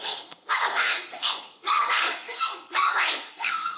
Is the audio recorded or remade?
remade